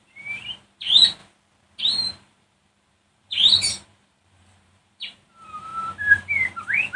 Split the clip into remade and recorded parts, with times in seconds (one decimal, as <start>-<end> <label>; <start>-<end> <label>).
0.0-1.2 remade; 1.2-1.8 recorded; 1.8-5.7 remade; 5.7-7.0 recorded